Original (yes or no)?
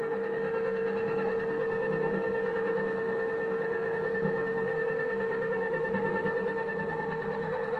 no